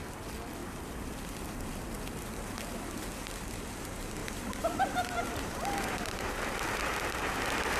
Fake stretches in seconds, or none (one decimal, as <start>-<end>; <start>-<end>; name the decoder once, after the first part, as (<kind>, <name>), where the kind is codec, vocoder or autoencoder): 4.2-6.3 (vocoder, BigVGAN v2)